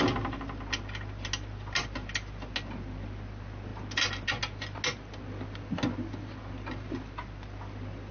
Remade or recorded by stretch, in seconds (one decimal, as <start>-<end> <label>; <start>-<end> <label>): 0.0-8.1 recorded